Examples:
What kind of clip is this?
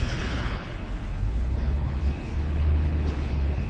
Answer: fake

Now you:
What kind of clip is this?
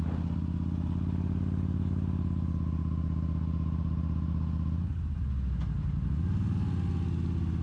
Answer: real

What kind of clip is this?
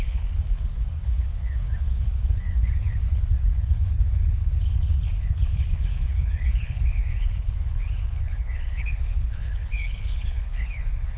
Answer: fake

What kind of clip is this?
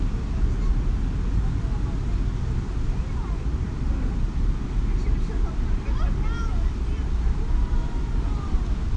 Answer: real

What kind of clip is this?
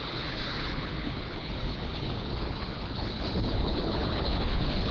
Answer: fake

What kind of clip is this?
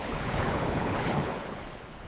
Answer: fake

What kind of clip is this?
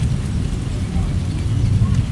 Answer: real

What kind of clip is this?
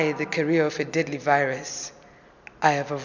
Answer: real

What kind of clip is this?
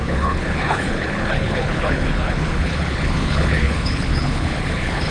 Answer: fake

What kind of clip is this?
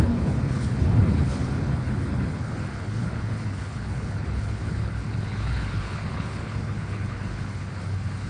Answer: fake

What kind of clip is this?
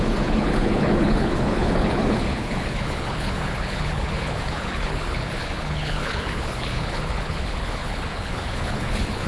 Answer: fake